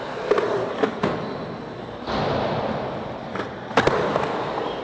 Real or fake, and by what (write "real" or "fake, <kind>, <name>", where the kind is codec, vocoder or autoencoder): real